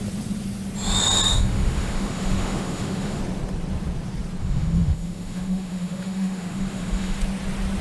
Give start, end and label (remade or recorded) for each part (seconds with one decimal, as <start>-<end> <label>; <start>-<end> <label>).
0.0-1.3 recorded; 1.3-3.2 remade; 3.2-4.4 recorded; 4.4-7.2 remade; 7.2-7.8 recorded